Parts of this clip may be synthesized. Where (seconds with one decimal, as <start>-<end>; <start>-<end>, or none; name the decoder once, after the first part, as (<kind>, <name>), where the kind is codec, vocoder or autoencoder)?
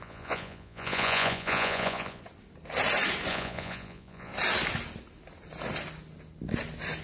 0.0-2.2 (vocoder, Vocos); 3.3-4.3